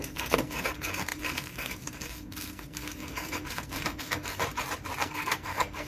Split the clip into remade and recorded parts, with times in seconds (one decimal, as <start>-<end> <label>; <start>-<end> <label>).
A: 0.0-4.4 remade; 4.4-5.0 recorded; 5.0-5.9 remade